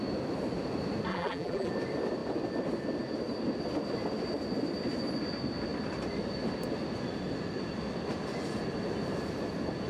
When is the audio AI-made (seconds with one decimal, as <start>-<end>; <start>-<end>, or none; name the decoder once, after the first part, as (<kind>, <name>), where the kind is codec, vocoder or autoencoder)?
1.1-1.7 (vocoder, BigVGAN v2)